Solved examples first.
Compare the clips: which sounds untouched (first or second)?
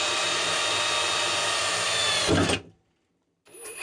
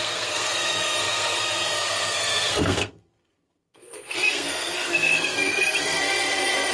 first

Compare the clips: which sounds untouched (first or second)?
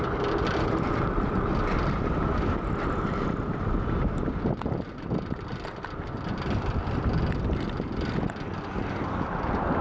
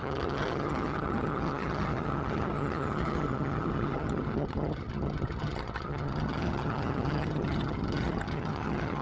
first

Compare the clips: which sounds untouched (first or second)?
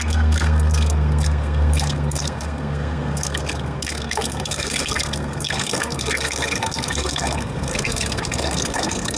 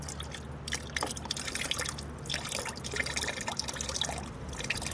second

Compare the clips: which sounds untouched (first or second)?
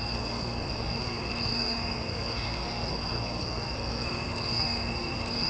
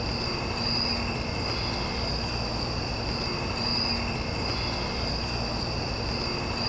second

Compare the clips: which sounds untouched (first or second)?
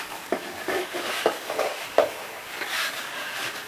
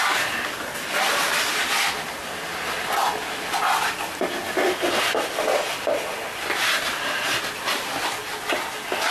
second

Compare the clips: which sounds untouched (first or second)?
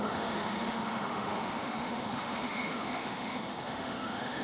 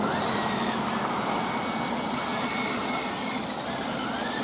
second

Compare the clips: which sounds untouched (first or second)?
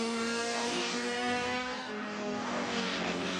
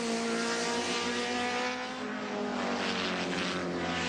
second